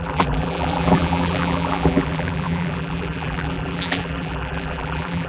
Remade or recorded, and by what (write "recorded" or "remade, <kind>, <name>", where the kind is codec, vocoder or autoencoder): remade, vocoder, BigVGAN v2